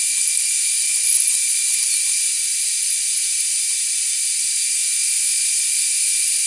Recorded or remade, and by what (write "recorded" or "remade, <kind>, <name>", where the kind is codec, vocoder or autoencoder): recorded